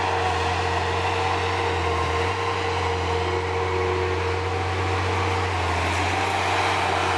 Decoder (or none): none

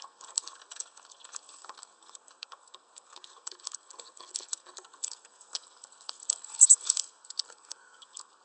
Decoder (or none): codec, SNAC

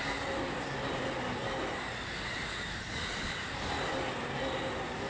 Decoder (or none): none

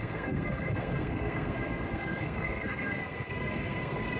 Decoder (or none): codec, SNAC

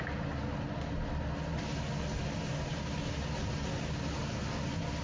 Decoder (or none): none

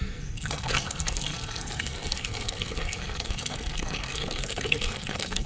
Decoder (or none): codec, SNAC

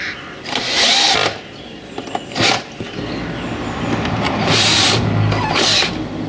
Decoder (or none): none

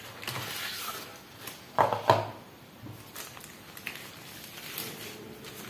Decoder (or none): none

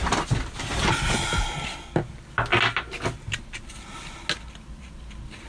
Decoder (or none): none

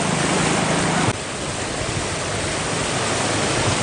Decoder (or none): none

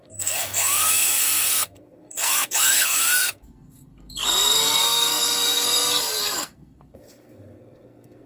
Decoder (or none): codec, SNAC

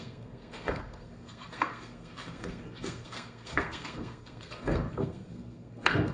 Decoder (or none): codec, SNAC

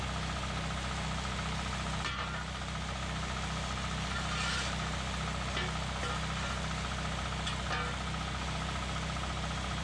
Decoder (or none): none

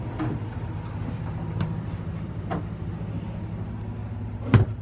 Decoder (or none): none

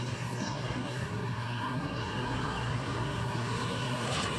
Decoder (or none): codec, SNAC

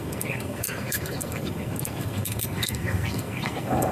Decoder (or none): codec, SNAC